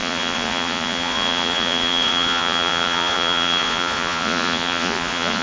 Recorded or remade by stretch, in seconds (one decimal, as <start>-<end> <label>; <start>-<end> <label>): 0.0-5.4 remade